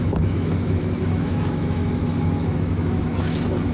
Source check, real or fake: fake